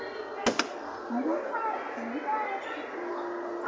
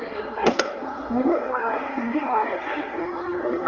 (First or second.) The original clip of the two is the first